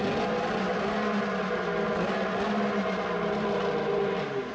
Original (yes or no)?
yes